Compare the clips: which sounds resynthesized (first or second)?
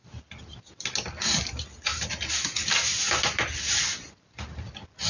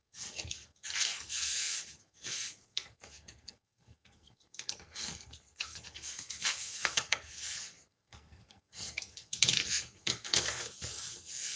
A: second